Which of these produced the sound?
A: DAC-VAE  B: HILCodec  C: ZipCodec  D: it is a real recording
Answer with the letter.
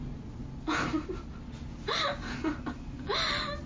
D